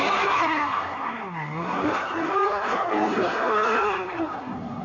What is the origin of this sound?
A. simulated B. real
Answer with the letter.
A